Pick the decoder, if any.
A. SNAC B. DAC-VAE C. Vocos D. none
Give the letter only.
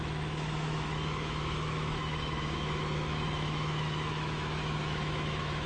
B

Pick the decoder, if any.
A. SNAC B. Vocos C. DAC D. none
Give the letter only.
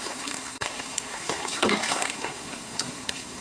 A